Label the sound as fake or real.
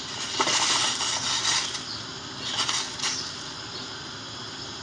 real